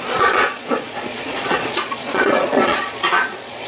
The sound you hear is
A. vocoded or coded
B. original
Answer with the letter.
A